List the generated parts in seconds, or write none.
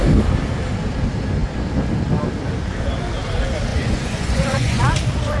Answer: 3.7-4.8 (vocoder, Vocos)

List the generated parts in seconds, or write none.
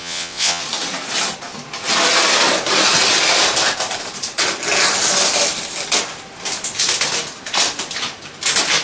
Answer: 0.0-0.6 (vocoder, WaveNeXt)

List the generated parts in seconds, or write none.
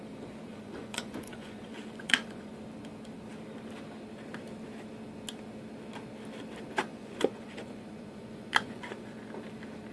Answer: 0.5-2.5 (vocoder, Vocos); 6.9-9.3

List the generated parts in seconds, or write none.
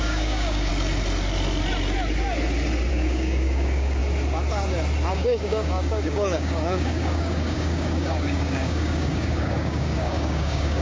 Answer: 0.0-0.7 (codec, DAC); 2.9-4.0; 5.1-10.8